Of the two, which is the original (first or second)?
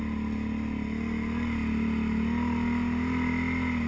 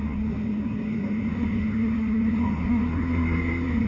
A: first